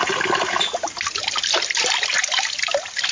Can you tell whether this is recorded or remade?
recorded